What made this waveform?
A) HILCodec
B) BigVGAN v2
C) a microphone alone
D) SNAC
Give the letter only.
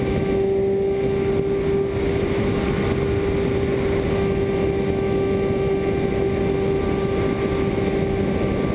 C